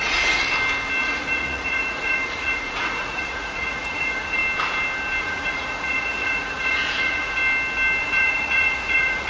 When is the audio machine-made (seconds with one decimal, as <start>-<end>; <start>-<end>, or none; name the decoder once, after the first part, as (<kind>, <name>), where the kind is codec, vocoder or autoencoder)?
0.0-0.4 (vocoder, Vocos); 1.0-4.4; 5.2-7.4; 8.0-9.3

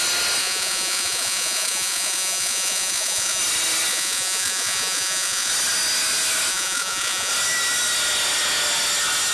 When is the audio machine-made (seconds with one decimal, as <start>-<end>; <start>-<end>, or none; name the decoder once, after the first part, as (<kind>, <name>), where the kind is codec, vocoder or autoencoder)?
0.4-3.4 (vocoder, Vocos); 3.9-5.5; 6.5-7.3

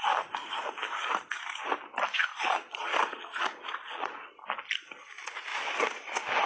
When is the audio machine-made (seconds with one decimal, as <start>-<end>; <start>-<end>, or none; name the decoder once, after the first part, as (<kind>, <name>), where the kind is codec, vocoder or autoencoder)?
2.3-4.3 (vocoder, Vocos)

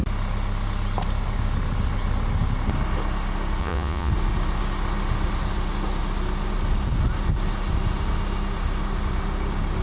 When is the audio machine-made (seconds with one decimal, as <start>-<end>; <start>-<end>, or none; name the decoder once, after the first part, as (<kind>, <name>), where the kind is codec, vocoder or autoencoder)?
3.6-4.1 (vocoder, Vocos)